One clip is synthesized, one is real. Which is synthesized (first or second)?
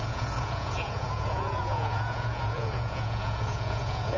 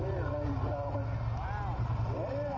first